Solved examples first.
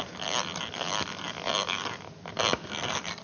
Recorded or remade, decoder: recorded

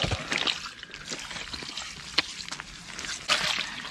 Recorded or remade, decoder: recorded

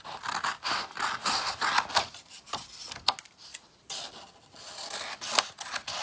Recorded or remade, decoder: recorded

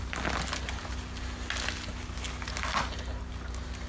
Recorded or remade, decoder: recorded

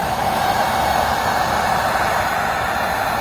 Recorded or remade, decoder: recorded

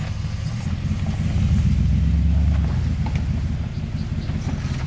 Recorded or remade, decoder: recorded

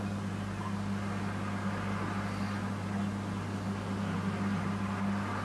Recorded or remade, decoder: recorded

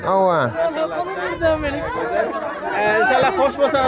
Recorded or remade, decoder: recorded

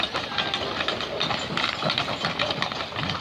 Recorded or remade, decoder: recorded